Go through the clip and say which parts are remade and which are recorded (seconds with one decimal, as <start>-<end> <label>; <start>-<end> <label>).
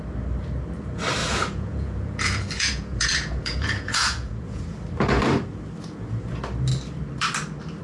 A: 0.0-1.2 recorded; 1.2-4.6 remade; 4.6-7.8 recorded